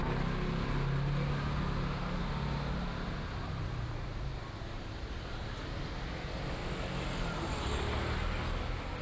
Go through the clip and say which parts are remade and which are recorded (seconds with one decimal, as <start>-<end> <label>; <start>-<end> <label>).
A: 0.0-9.0 recorded